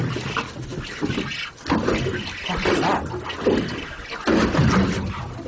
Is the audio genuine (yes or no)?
yes